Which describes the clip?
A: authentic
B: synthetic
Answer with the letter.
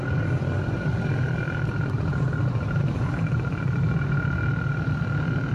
A